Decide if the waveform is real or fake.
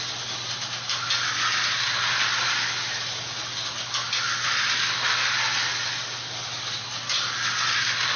real